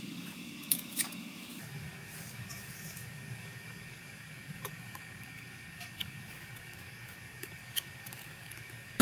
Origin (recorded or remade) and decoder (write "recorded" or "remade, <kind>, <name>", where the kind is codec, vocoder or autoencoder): remade, codec, DAC